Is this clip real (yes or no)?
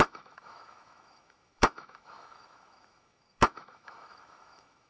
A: no